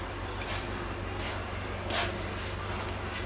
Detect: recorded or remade recorded